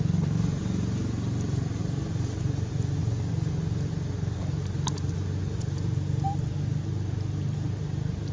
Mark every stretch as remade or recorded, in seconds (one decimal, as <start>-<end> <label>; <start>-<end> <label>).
0.0-8.3 recorded